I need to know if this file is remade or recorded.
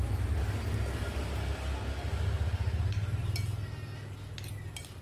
recorded